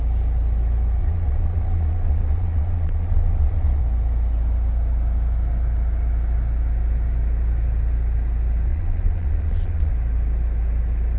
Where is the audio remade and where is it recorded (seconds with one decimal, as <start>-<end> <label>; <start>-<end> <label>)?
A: 0.0-1.0 recorded; 1.0-3.8 remade; 3.8-8.7 recorded; 8.7-9.9 remade; 9.9-11.2 recorded